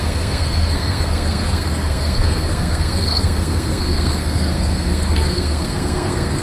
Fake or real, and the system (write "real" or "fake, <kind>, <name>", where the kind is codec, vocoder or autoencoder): fake, codec, SNAC